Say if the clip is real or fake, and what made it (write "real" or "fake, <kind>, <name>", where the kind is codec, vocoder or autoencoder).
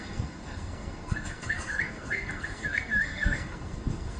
fake, codec, SNAC